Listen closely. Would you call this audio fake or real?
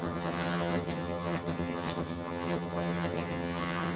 fake